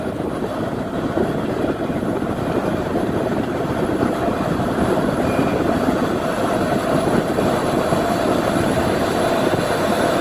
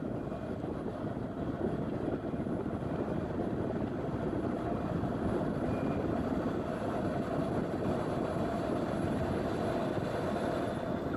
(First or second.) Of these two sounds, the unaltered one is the second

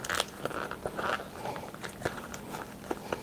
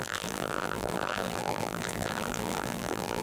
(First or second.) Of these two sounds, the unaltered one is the first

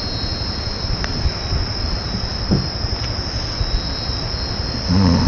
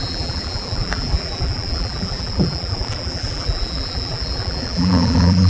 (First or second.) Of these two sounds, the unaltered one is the first